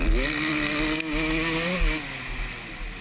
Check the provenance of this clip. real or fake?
real